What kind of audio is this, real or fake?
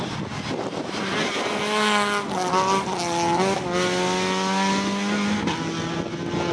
real